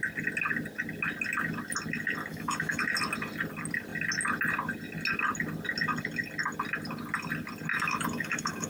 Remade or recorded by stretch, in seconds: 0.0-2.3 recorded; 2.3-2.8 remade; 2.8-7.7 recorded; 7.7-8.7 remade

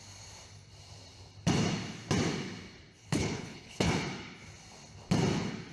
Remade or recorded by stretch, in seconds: 0.0-3.0 recorded; 3.0-3.9 remade; 3.9-5.7 recorded

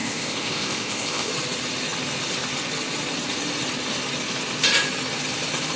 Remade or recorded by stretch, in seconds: 0.0-1.3 remade; 1.3-5.8 recorded

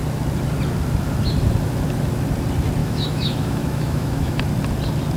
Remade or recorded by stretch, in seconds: 0.0-2.8 recorded; 2.8-4.4 remade; 4.4-5.2 recorded

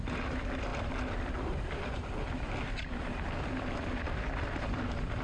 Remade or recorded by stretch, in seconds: 0.0-0.7 recorded; 0.7-3.8 remade; 3.8-5.2 recorded

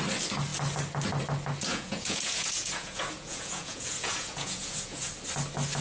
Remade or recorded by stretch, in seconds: 0.0-1.7 recorded; 1.7-5.0 remade; 5.0-5.8 recorded